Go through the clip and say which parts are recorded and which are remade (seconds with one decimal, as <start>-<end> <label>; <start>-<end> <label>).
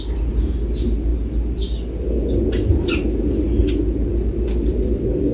0.0-5.3 recorded